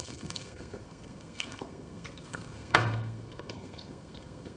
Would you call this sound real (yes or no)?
no